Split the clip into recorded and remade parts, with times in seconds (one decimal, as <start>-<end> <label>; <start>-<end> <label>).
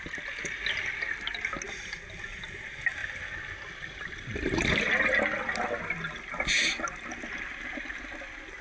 0.0-8.6 recorded